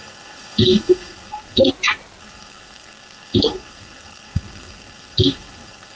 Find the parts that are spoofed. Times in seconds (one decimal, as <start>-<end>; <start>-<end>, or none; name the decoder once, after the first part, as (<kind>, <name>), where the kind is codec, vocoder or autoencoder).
0.0-1.7 (codec, SNAC); 2.2-6.0